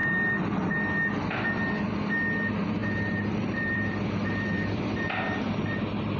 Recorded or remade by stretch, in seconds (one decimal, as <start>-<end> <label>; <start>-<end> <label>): 0.0-2.8 recorded; 2.8-5.5 remade; 5.5-6.2 recorded